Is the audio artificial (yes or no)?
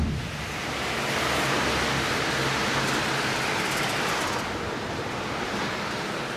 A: no